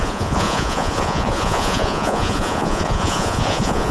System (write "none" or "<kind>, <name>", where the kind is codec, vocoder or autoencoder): vocoder, Vocos